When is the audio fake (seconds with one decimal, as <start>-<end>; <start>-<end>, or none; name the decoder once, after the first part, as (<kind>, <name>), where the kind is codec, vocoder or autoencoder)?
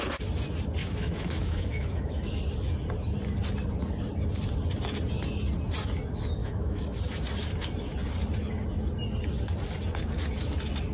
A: 0.8-2.4 (autoencoder, DAC-VAE); 6.4-7.0